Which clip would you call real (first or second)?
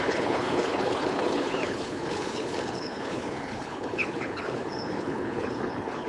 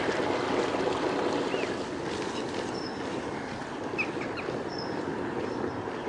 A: second